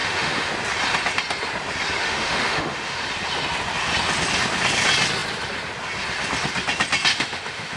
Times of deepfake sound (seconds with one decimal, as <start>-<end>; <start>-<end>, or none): 0.0-0.5; 2.0-3.0; 7.1-7.8